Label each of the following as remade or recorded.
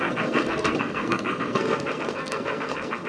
remade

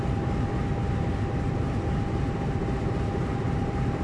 recorded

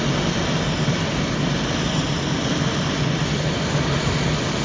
recorded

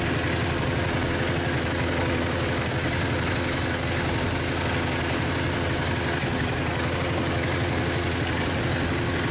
recorded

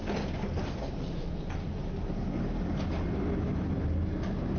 recorded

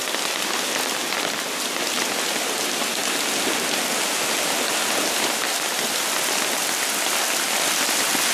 recorded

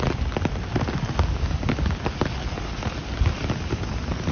recorded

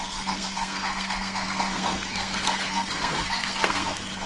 remade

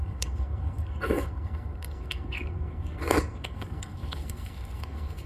remade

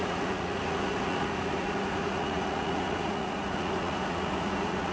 remade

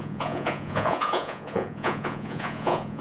remade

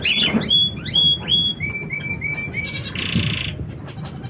recorded